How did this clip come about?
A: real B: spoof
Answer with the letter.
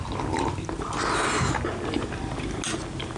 A